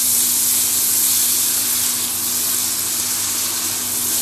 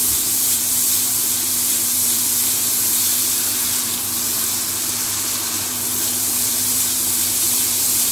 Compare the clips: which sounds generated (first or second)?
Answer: second